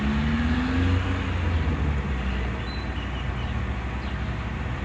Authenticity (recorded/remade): recorded